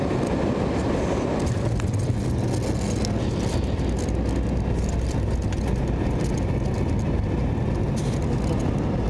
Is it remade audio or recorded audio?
recorded